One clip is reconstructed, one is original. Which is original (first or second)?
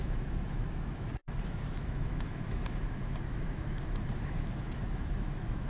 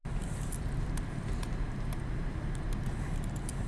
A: second